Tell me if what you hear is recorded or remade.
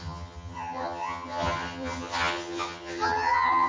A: remade